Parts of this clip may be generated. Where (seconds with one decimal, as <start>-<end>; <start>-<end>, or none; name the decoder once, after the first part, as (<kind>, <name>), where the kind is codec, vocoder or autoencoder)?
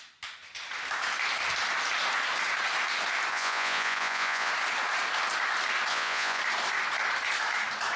3.3-4.5 (vocoder, Vocos); 5.9-6.4